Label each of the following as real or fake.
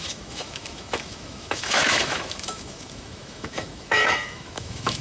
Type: fake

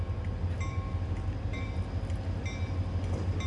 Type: real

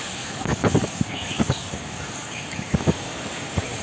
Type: fake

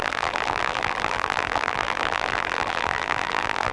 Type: fake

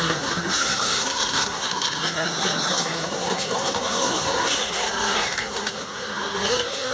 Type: fake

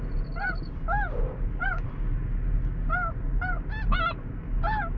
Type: real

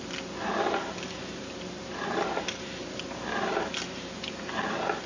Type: real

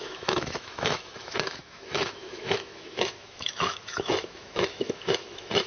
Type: fake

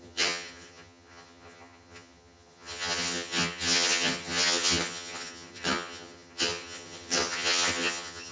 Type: fake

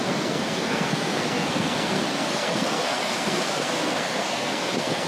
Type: fake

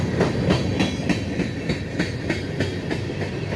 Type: real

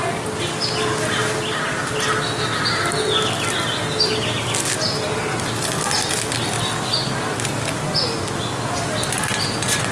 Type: real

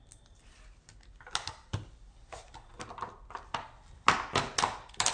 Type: real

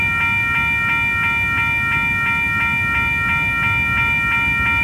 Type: real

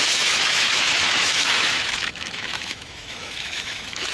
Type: fake